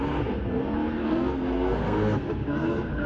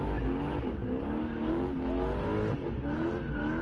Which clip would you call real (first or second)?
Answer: second